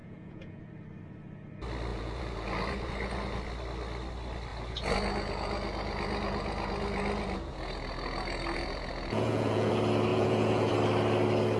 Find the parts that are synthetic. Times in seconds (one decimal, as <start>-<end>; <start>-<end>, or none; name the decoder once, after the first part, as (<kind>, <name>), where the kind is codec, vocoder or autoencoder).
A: 0.0-0.6 (vocoder, Vocos); 1.9-3.4; 4.5-9.7; 10.1-10.7